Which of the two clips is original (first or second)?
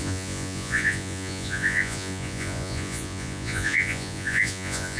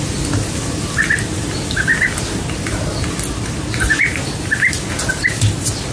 second